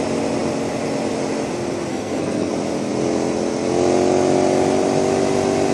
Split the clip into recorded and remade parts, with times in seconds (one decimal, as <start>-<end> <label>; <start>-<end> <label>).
0.0-1.9 recorded; 1.9-2.5 remade; 2.5-5.7 recorded